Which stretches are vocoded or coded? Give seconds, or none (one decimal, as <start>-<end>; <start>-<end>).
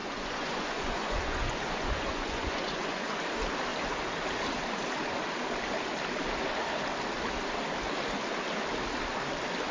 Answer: 0.0-3.2